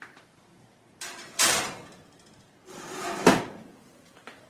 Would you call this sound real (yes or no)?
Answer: no